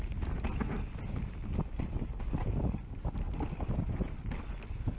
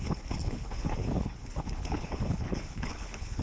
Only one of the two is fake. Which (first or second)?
second